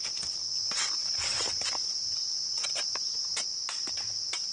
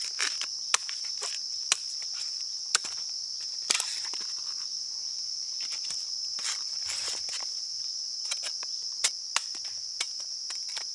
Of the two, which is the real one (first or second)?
first